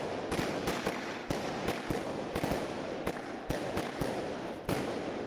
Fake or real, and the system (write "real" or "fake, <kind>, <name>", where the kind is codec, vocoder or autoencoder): fake, vocoder, BigVGAN v2